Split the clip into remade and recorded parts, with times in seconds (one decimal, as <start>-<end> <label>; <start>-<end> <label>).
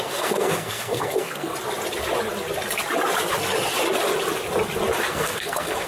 0.0-1.5 remade; 1.5-5.0 recorded; 5.0-5.9 remade